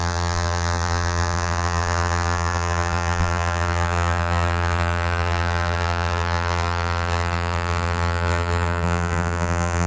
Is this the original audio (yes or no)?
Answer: no